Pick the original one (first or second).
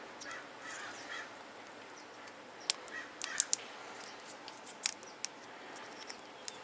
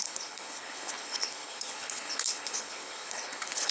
first